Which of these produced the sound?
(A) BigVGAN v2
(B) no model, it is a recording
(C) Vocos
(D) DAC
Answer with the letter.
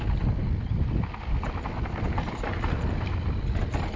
B